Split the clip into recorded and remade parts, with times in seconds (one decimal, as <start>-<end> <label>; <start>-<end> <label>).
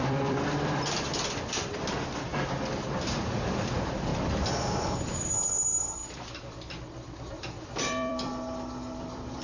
0.0-2.3 remade; 2.3-3.0 recorded; 3.0-4.1 remade; 4.1-4.7 recorded; 4.7-9.4 remade